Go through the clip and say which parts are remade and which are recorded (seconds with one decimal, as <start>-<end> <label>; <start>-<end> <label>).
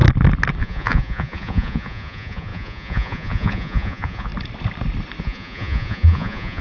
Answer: 0.0-0.6 recorded; 0.6-4.3 remade; 4.3-5.2 recorded; 5.2-6.6 remade